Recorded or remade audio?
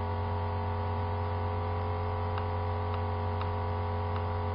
recorded